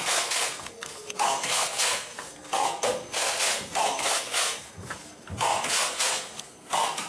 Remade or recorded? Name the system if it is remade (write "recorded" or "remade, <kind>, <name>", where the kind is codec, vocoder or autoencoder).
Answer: remade, codec, SNAC